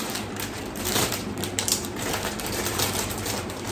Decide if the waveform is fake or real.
fake